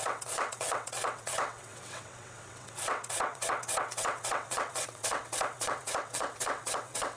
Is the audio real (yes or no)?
no